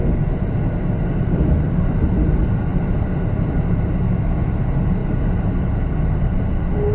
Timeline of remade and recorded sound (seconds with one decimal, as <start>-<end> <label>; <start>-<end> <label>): 0.0-6.9 recorded